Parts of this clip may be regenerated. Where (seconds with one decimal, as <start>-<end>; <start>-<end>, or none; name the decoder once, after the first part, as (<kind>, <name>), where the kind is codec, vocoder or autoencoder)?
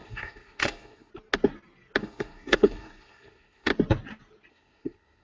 0.0-1.1 (codec, SNAC); 2.0-3.7; 4.5-5.2